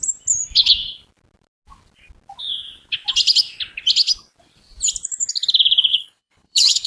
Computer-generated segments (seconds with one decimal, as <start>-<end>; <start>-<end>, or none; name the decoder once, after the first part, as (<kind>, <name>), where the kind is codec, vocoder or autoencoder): 5.9-6.9 (codec, HILCodec)